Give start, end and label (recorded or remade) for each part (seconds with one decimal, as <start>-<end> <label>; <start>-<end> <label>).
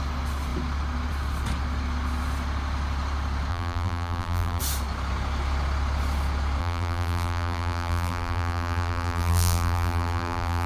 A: 0.0-3.5 recorded; 3.5-4.6 remade; 4.6-6.6 recorded; 6.6-10.7 remade